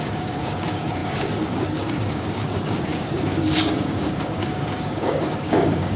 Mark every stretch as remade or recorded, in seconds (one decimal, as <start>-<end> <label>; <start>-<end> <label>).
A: 0.0-6.0 remade